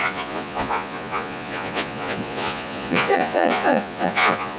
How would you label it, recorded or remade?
remade